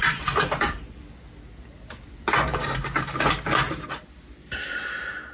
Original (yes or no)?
yes